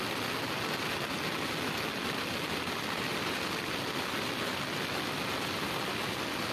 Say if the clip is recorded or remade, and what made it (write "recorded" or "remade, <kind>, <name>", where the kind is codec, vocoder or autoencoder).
recorded